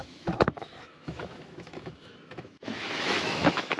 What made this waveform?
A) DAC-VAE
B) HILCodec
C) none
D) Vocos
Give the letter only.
A